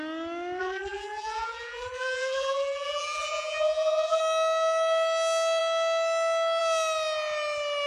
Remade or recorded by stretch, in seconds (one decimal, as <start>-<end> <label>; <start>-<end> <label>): 0.0-0.6 recorded; 0.6-4.2 remade; 4.2-7.9 recorded